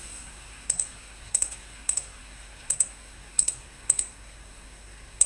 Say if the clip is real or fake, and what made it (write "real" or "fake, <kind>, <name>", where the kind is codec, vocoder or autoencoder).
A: fake, codec, SNAC